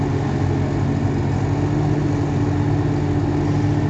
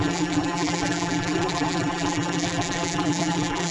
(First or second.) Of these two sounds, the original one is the first